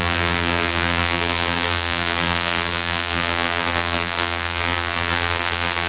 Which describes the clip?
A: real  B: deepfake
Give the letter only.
B